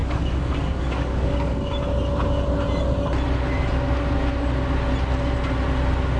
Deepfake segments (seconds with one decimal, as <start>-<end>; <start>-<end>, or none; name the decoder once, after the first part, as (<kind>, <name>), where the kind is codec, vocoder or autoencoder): 0.0-1.7 (codec, DAC)